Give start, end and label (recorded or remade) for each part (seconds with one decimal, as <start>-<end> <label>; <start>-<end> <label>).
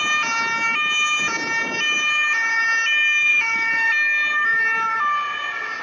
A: 0.0-3.3 recorded; 3.3-3.9 remade; 3.9-5.8 recorded